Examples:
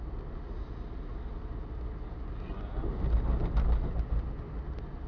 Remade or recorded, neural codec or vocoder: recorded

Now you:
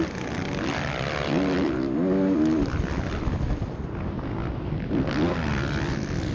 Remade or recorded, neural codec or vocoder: recorded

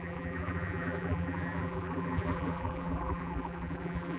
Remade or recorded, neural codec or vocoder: remade, vocoder, BigVGAN v2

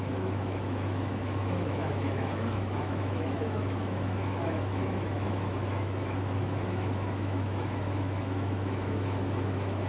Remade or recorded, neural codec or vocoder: remade, autoencoder, DAC-VAE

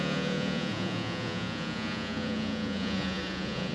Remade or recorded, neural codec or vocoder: remade, vocoder, Vocos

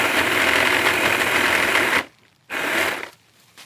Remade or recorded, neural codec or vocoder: remade, vocoder, BigVGAN v2